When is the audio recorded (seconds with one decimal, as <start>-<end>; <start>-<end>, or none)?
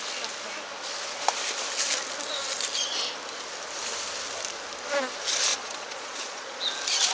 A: 0.0-5.5; 6.6-7.1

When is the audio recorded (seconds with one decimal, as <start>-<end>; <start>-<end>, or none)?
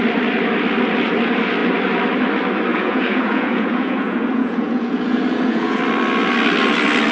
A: 0.0-2.7; 5.8-7.1